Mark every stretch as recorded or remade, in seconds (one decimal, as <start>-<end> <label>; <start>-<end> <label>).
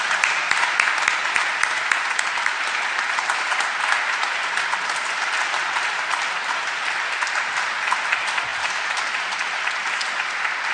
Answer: 0.0-10.7 recorded